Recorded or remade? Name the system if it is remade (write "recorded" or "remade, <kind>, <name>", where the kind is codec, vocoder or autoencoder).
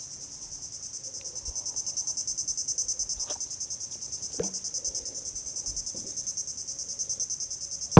recorded